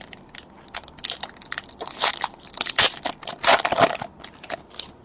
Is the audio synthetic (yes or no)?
no